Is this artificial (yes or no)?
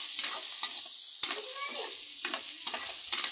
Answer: no